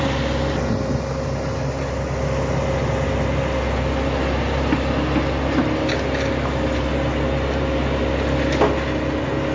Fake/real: real